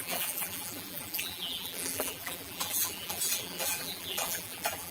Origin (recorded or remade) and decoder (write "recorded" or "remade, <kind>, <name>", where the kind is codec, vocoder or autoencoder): remade, vocoder, BigVGAN v2